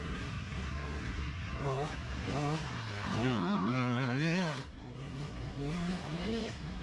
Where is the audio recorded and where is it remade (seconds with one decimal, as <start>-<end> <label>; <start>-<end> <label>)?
0.0-6.8 remade